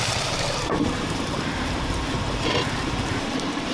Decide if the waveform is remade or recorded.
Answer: remade